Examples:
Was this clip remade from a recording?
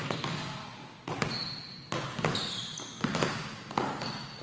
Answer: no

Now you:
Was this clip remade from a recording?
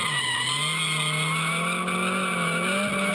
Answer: no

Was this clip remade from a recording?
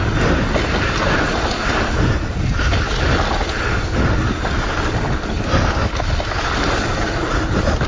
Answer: no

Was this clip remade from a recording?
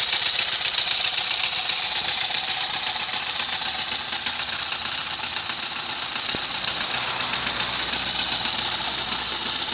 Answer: no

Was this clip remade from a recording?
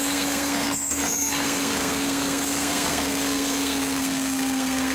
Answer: yes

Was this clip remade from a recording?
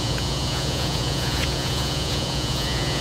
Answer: yes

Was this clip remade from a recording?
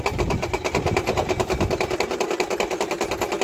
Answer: no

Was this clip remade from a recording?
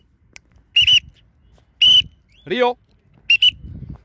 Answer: no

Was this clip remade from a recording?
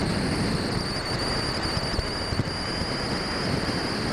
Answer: no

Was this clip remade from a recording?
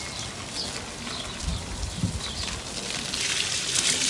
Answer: no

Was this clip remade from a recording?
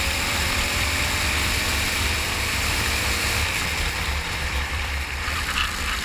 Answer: yes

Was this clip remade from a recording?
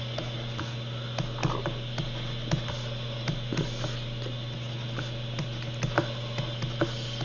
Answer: no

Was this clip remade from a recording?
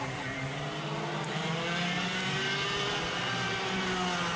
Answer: no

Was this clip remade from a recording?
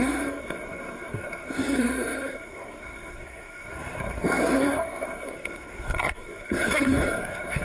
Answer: yes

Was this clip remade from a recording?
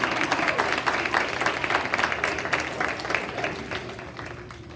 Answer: no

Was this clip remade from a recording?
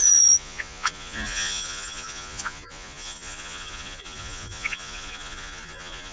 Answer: yes